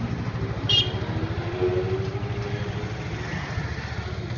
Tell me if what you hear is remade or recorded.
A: recorded